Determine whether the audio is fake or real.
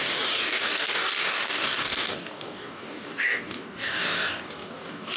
fake